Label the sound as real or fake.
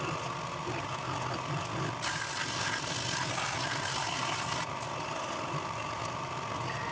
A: real